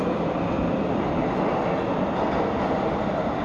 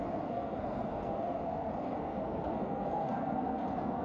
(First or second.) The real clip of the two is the first